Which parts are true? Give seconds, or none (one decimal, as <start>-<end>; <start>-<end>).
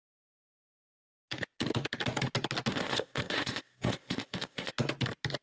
0.0-2.7; 4.7-5.4